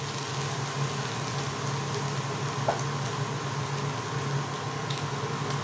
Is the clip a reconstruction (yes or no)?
no